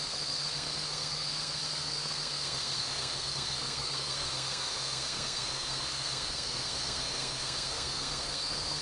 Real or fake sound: fake